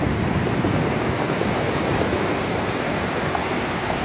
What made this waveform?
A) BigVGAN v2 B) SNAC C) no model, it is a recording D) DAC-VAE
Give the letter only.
C